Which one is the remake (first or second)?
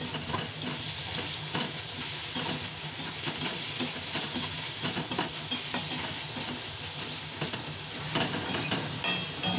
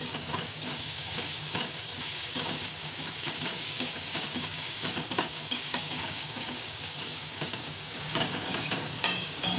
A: second